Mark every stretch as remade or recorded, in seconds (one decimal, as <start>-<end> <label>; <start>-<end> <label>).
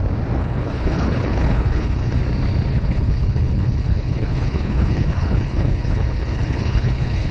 0.0-0.4 recorded; 0.4-2.2 remade; 2.2-2.7 recorded; 2.7-7.3 remade